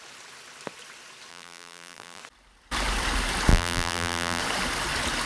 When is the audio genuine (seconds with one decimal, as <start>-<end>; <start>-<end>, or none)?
0.0-1.3; 2.2-3.5; 4.4-5.3